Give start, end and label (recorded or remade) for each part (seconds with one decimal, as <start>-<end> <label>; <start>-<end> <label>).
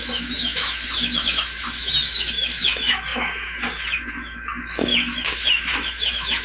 0.0-6.4 remade